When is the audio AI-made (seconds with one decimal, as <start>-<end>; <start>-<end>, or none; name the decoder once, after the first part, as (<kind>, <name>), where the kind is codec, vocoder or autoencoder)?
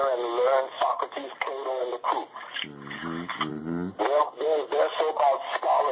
none